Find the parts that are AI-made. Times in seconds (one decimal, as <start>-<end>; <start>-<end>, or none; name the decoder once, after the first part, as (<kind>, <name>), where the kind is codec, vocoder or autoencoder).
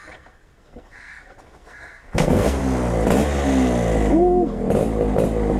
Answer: 0.0-2.6 (codec, SNAC); 4.1-4.6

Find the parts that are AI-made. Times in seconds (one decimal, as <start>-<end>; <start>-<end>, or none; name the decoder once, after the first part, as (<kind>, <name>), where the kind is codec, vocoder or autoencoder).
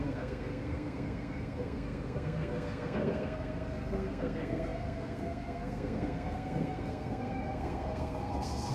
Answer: 0.0-8.7 (codec, SNAC)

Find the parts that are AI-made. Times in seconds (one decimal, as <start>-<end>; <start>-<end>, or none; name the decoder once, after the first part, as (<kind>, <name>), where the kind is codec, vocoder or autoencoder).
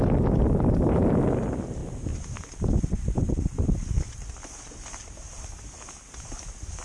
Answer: none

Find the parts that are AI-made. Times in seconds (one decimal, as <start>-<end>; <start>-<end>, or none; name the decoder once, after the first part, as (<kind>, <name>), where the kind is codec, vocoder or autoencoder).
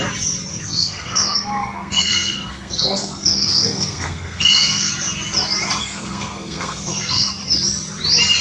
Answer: 0.5-4.9 (codec, SNAC); 5.8-7.3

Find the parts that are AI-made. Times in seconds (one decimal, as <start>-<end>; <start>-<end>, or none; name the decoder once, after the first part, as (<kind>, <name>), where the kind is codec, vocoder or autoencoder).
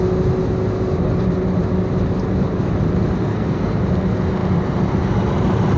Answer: 3.3-3.8 (codec, SNAC)